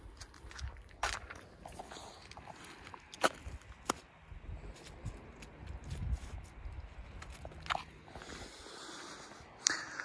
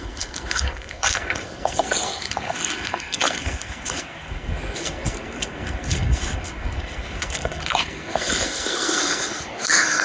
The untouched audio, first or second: first